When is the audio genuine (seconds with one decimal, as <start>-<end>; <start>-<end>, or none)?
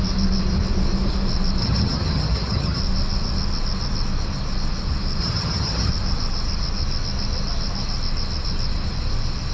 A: 0.0-1.6; 2.8-5.2; 5.9-9.5